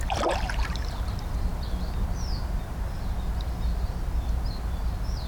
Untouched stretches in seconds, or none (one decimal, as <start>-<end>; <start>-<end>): 0.0-5.3